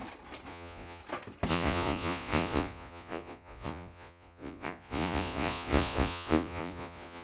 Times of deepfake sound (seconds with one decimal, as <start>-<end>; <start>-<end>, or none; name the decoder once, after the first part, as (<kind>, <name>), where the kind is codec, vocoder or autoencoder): 0.5-1.0 (vocoder, Vocos); 1.5-7.2